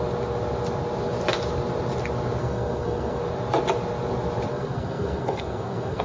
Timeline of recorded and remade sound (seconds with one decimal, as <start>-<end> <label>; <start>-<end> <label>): 0.0-2.4 recorded; 2.4-3.2 remade; 3.2-4.5 recorded; 4.5-6.0 remade